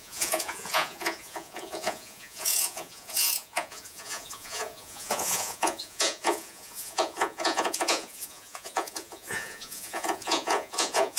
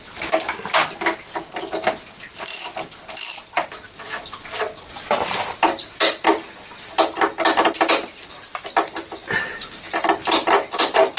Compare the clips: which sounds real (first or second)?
second